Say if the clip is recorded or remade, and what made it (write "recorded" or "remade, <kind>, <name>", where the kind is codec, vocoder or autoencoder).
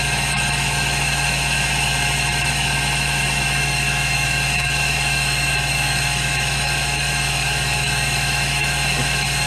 remade, autoencoder, DAC-VAE